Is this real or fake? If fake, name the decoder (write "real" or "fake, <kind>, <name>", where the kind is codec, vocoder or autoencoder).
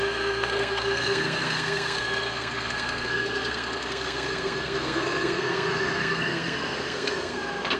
fake, codec, SNAC